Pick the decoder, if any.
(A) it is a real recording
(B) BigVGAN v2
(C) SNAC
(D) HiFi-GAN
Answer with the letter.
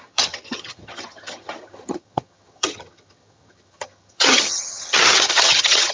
D